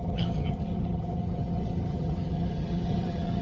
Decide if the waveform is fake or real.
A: fake